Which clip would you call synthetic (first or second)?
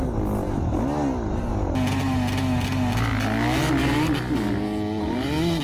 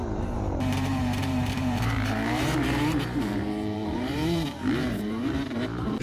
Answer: second